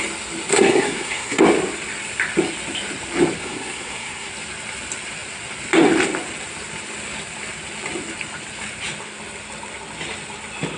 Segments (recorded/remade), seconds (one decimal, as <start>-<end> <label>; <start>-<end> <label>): 0.0-0.5 recorded; 0.5-1.4 remade; 1.4-3.4 recorded; 3.4-4.3 remade; 4.3-10.8 recorded